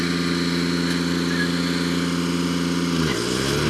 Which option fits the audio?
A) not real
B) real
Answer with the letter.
B